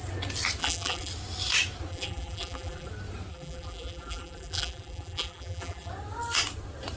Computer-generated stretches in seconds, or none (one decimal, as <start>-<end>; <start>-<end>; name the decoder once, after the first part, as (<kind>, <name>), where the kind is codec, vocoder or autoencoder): 0.6-1.1 (vocoder, BigVGAN v2); 1.9-2.9; 3.3-5.9